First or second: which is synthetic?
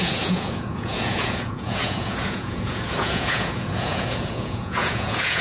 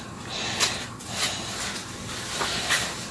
first